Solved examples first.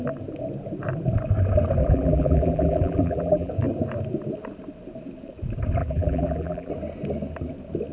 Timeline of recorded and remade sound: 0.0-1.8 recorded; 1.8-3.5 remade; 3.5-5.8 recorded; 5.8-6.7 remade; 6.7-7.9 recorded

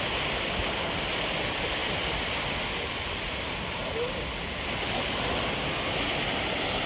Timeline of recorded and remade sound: 0.0-6.9 recorded

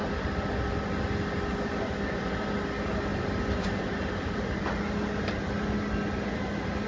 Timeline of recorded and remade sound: 0.0-3.1 recorded; 3.1-4.6 remade; 4.6-6.9 recorded

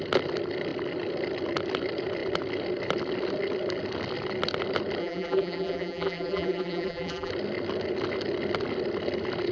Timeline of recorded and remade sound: 0.0-5.0 recorded; 5.0-7.3 remade; 7.3-9.5 recorded

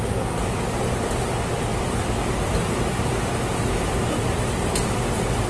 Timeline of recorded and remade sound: 0.0-5.5 recorded

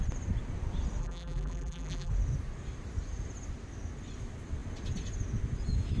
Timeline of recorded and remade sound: 0.0-1.0 recorded; 1.0-2.1 remade; 2.1-6.0 recorded

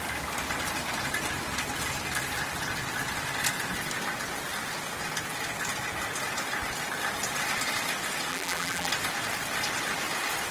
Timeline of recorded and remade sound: 0.0-8.3 recorded; 8.3-8.9 remade; 8.9-10.5 recorded